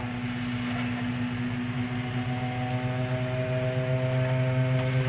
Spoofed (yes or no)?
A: no